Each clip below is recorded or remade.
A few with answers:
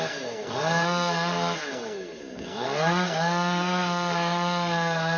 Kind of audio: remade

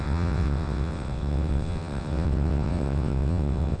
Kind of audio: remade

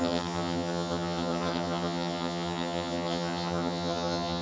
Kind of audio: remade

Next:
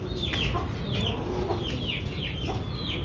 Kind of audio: recorded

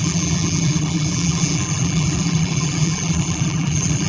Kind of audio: remade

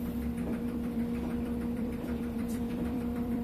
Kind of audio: remade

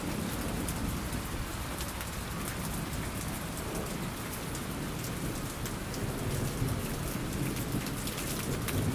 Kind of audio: recorded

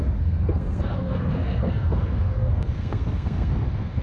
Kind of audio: remade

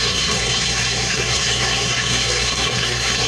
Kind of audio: remade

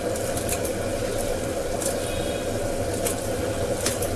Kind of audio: recorded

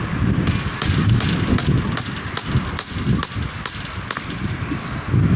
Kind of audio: recorded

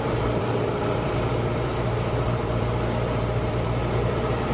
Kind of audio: remade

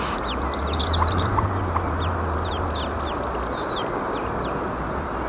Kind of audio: recorded